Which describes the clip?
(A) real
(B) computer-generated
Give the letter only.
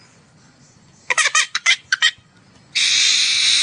B